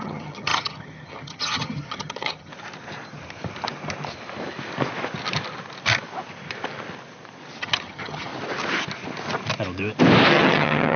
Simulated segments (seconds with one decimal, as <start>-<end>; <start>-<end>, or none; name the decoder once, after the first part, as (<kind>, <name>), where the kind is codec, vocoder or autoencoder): 0.0-2.5 (vocoder, HiFi-GAN); 7.6-8.3; 10.3-11.0